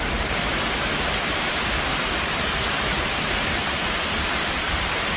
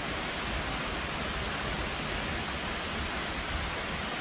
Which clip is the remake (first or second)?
first